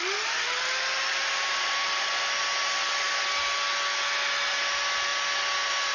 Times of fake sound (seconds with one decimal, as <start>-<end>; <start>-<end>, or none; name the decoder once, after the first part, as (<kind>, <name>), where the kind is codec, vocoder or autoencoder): none